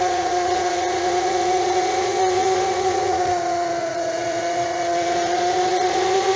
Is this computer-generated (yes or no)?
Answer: yes